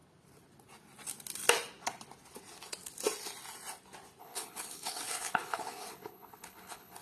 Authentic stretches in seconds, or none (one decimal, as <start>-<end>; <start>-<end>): 0.0-4.2